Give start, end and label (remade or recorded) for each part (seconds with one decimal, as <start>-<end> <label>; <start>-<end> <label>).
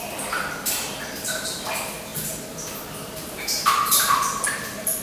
0.0-5.0 remade